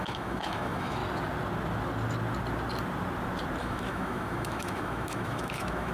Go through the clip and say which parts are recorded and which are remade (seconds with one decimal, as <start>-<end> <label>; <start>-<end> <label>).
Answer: 0.0-1.0 remade; 1.0-3.6 recorded; 3.6-5.9 remade